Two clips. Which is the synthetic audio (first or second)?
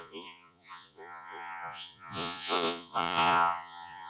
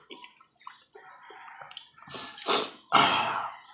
first